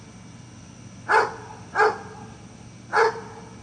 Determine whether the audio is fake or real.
real